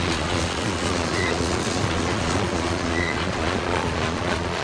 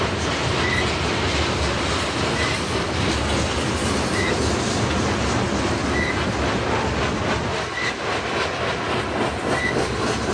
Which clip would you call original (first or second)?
second